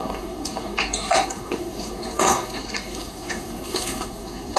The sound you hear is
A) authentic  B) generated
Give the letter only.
B